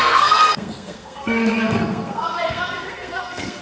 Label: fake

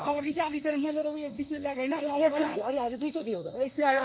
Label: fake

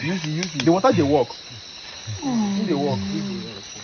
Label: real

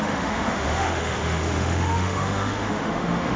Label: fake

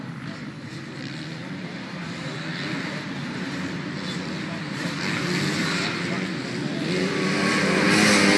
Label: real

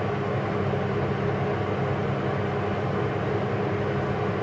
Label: real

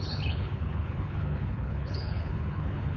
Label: fake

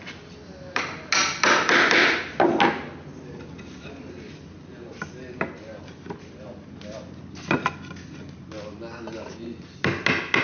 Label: real